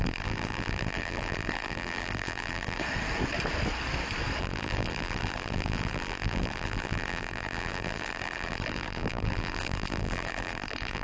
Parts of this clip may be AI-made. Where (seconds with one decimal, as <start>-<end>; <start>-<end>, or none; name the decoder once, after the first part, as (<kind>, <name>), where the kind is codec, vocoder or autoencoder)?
0.0-2.8 (vocoder, BigVGAN v2); 4.4-11.0